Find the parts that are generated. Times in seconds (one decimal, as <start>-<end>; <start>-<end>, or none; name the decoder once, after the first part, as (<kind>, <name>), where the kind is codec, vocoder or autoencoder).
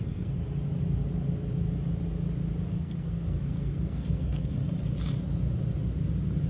0.0-0.4 (codec, SNAC); 2.6-4.6